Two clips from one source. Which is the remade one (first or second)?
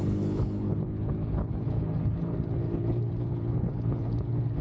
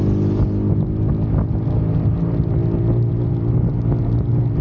first